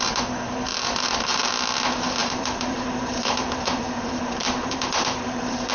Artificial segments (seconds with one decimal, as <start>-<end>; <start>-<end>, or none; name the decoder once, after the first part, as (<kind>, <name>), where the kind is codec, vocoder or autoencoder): 0.7-1.4 (vocoder, BigVGAN v2); 2.2-5.7